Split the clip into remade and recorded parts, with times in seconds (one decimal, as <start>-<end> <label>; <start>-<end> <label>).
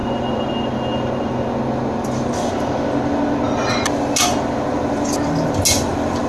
0.0-6.3 recorded